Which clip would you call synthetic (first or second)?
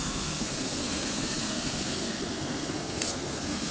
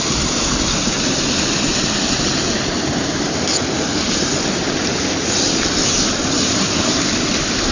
first